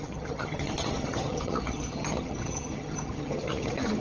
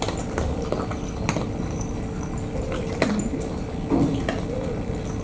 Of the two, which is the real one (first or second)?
second